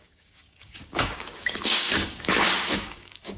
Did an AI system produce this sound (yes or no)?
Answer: yes